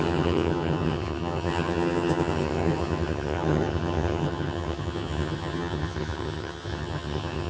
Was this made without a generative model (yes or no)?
no